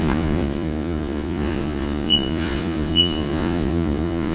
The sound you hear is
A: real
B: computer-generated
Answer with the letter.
B